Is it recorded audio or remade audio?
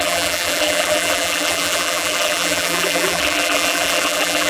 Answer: remade